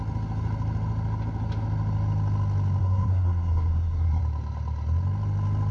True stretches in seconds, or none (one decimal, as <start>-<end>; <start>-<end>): 0.0-2.8; 4.2-5.7